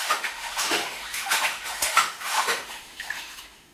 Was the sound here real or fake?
fake